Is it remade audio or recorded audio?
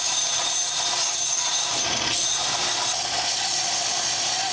recorded